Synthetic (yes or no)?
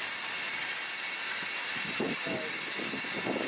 no